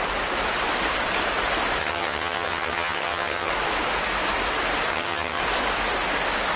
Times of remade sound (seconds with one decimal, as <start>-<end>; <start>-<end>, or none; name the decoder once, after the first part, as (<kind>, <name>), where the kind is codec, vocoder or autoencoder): 1.8-3.5 (vocoder, HiFi-GAN); 4.9-5.4